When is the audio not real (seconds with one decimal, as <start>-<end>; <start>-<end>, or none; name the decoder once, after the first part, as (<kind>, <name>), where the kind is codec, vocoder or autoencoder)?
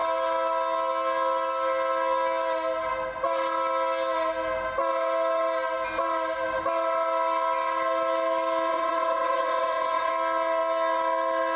8.7-10.1 (vocoder, WaveNeXt)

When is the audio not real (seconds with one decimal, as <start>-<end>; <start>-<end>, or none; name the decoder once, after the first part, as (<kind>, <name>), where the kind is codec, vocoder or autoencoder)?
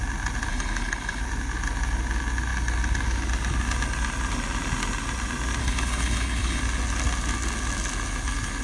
0.5-1.2 (codec, HILCodec); 5.6-6.6